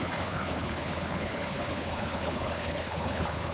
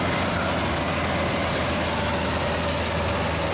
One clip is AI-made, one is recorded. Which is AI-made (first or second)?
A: first